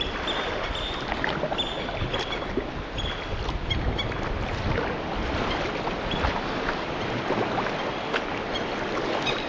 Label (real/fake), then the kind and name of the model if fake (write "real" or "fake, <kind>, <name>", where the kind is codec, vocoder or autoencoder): real